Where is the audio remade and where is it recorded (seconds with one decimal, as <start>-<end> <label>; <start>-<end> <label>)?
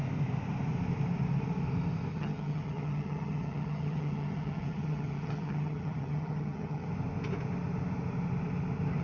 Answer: 0.0-2.1 recorded; 2.1-6.9 remade; 6.9-9.0 recorded